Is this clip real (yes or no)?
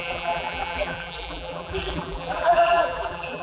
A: no